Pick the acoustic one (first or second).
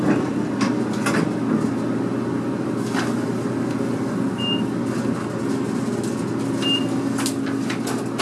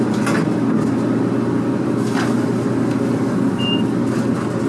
first